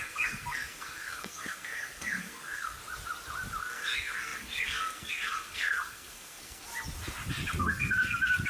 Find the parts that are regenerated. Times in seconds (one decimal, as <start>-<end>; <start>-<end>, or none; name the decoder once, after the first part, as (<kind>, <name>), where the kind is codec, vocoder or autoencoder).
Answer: 0.0-2.8 (codec, SNAC); 3.6-6.7; 7.6-8.5